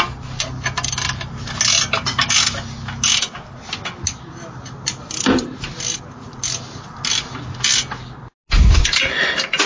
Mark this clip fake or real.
real